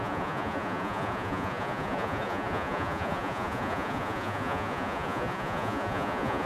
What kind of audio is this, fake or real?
fake